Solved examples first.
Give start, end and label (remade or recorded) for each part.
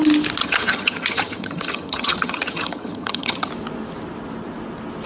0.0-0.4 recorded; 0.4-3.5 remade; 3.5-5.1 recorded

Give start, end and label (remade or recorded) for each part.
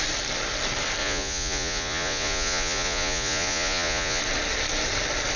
0.0-1.0 recorded; 1.0-4.2 remade; 4.2-5.4 recorded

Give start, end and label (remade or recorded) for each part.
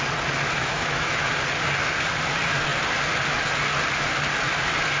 0.0-0.6 recorded; 0.6-1.3 remade; 1.3-5.0 recorded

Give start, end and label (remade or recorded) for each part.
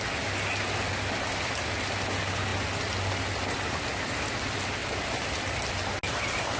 0.0-6.6 recorded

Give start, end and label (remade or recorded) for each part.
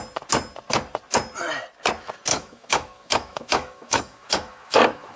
0.0-2.3 recorded; 2.3-5.2 remade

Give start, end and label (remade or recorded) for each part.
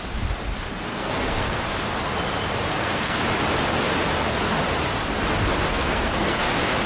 0.0-0.9 recorded; 0.9-1.6 remade; 1.6-2.7 recorded; 2.7-3.2 remade; 3.2-5.7 recorded; 5.7-6.5 remade; 6.5-6.9 recorded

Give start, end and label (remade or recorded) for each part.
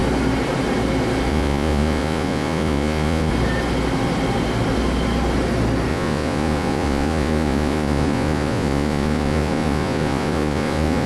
0.0-1.3 recorded; 1.3-3.3 remade; 3.3-5.9 recorded; 5.9-11.1 remade